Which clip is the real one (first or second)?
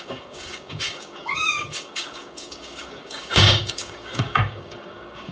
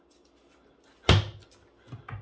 second